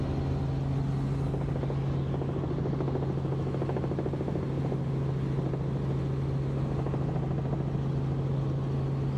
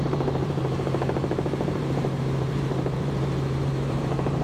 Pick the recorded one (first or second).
first